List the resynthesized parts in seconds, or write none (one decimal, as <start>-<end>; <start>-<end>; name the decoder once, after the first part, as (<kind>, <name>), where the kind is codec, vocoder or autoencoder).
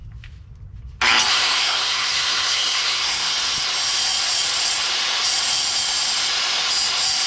1.3-3.3 (codec, SNAC)